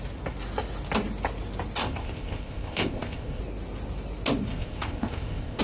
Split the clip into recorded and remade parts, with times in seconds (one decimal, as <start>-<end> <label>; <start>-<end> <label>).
0.0-1.8 recorded; 1.8-3.4 remade; 3.4-4.5 recorded; 4.5-5.6 remade